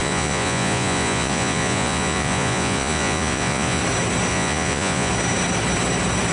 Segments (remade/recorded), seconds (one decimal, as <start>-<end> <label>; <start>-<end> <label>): 0.0-3.8 remade; 3.8-4.3 recorded; 4.3-5.1 remade; 5.1-6.3 recorded